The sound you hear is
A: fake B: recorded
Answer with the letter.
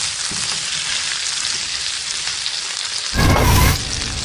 B